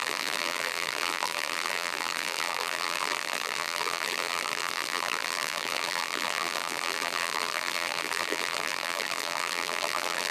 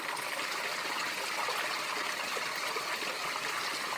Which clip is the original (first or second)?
second